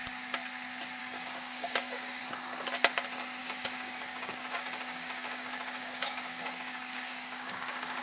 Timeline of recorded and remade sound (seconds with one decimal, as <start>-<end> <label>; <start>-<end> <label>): 0.0-1.0 recorded; 1.0-2.2 remade; 2.2-3.4 recorded; 3.4-8.0 remade